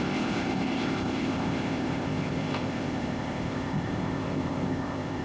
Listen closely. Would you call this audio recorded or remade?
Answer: remade